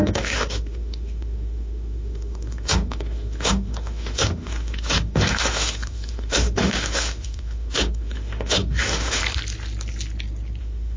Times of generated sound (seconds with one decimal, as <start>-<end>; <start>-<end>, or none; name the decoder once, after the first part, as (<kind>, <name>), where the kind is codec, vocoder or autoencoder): 0.0-9.2 (autoencoder, DAC-VAE); 10.6-11.0